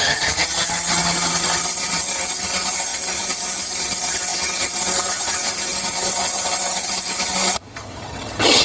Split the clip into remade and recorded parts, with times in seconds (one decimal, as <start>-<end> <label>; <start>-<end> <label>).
0.0-8.6 remade